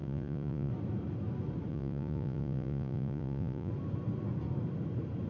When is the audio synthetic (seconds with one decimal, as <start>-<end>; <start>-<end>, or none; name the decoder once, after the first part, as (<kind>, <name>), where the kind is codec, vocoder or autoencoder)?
0.0-0.7 (vocoder, Vocos); 1.7-3.7